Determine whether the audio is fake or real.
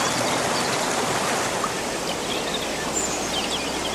real